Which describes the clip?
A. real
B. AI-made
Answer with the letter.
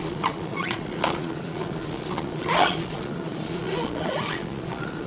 B